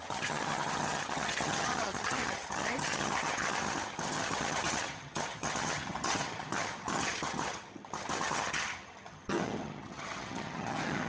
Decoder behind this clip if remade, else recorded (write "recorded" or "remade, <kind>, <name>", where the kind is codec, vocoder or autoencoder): remade, vocoder, HiFi-GAN